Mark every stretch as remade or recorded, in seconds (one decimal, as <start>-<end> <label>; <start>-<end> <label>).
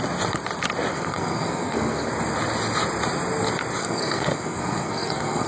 0.0-0.9 recorded; 0.9-2.1 remade; 2.1-3.8 recorded; 3.8-5.5 remade